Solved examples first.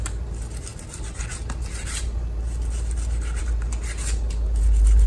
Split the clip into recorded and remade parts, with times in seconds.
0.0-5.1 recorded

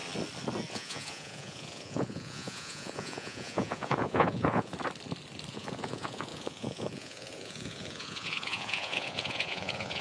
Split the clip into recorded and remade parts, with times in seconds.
0.0-0.7 recorded; 0.7-4.7 remade; 4.7-5.5 recorded; 5.5-10.0 remade

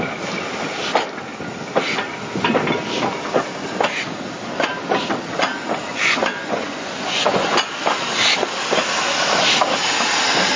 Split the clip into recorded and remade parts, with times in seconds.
0.0-5.9 recorded; 5.9-7.6 remade; 7.6-10.6 recorded

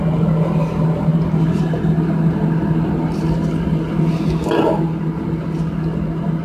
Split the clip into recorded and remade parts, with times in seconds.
0.0-6.4 recorded

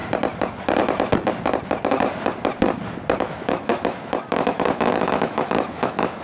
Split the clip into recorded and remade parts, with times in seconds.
0.0-3.2 recorded; 3.2-6.2 remade

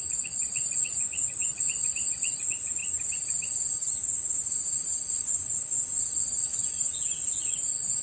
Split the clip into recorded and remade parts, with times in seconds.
0.0-2.8 remade; 2.8-5.1 recorded; 5.1-8.0 remade